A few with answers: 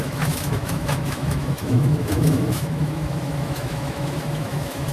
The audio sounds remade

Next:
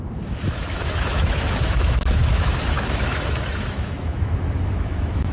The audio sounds remade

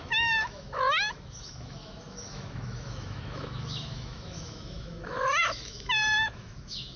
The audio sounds remade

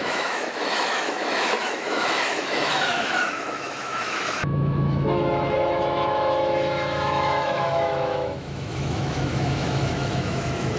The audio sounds remade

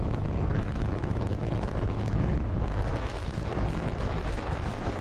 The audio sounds remade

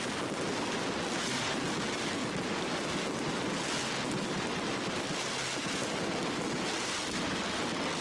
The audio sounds recorded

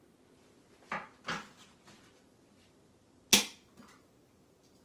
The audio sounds recorded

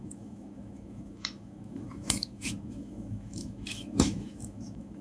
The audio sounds remade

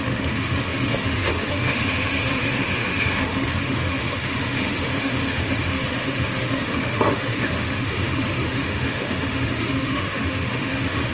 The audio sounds remade